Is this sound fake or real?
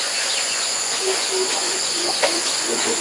fake